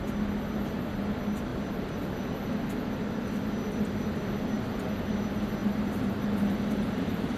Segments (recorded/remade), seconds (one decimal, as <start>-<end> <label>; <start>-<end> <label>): 0.0-5.6 recorded; 5.6-7.4 remade